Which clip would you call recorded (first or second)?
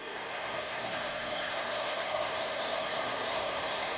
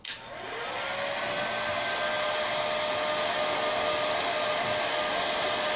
second